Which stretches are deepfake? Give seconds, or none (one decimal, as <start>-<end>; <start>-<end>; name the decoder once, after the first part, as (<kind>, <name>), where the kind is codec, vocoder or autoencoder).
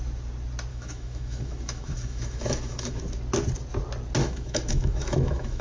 0.7-3.0 (autoencoder, DAC-VAE); 4.2-5.6